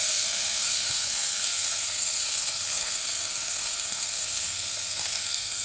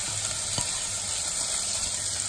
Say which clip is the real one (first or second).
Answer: second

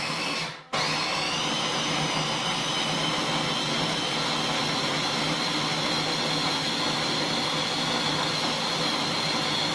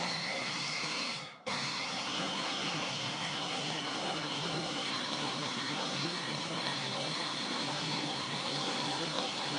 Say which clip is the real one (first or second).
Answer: first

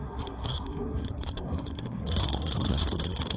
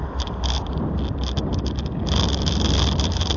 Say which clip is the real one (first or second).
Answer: second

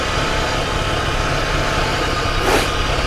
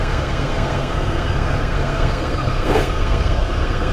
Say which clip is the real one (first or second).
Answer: first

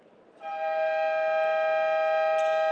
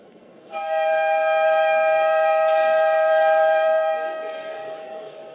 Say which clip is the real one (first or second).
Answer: first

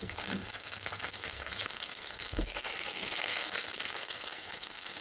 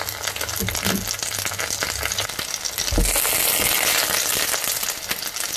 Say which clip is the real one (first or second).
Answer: second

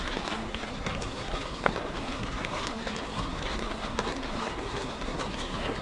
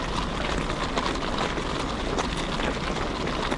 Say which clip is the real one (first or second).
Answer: second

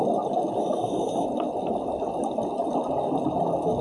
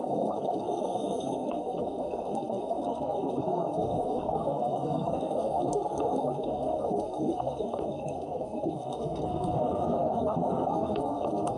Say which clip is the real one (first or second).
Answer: first